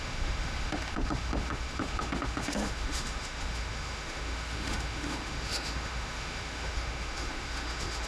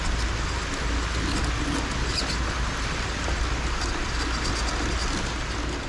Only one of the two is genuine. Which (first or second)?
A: second